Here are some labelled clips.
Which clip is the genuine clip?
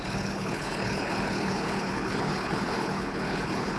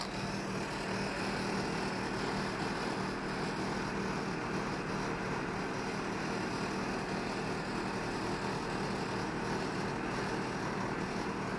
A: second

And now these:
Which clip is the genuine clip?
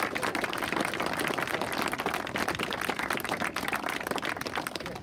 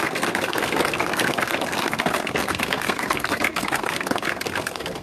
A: first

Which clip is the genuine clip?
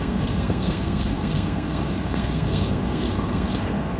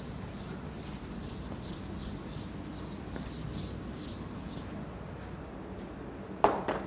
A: second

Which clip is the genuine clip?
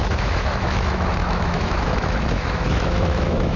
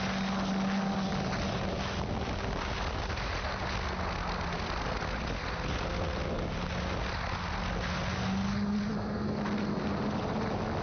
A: second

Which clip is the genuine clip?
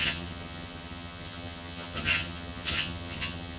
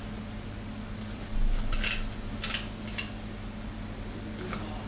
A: second